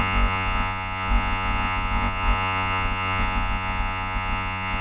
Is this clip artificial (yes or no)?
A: yes